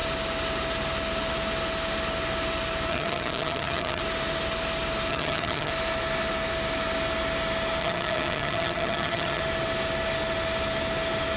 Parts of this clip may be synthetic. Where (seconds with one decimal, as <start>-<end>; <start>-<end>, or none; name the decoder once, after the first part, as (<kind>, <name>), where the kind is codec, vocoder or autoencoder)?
2.9-4.0 (vocoder, HiFi-GAN); 5.1-5.7; 7.8-9.4